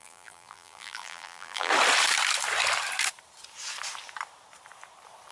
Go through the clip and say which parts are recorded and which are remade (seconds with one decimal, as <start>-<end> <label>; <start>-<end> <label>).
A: 0.0-1.7 remade; 1.7-5.3 recorded